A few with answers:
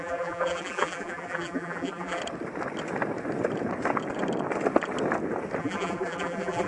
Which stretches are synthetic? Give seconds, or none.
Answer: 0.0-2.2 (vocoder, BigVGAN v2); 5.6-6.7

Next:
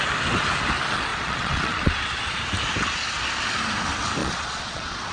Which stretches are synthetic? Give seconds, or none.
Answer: 1.1-2.4 (vocoder, Vocos); 4.2-5.1

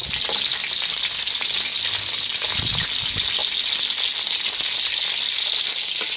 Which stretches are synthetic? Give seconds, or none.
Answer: none

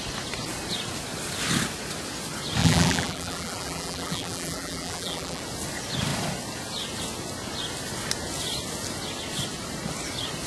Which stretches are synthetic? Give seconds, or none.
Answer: 2.6-5.4 (vocoder, BigVGAN v2)

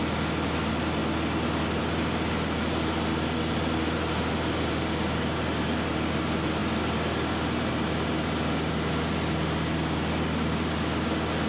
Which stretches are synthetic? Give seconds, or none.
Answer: none

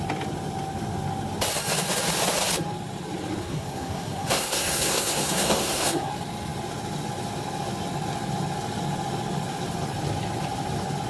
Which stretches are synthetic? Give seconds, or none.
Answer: 3.4-6.1 (codec, SNAC)

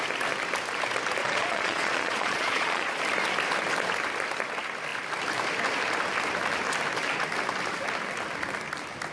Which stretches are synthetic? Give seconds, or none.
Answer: 1.2-3.0 (vocoder, Vocos)